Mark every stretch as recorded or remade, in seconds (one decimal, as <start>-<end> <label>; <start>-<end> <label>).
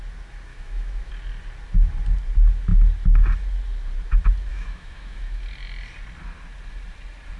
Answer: 0.0-0.5 recorded; 0.5-1.1 remade; 1.1-4.5 recorded; 4.5-5.4 remade; 5.4-7.4 recorded